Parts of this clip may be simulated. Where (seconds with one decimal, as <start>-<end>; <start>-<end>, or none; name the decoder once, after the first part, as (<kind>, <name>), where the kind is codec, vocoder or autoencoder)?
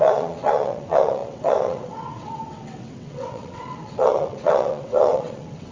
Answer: 0.0-5.7 (vocoder, WaveNeXt)